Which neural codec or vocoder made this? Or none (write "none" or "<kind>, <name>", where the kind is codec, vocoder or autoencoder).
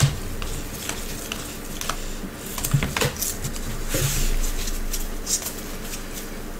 none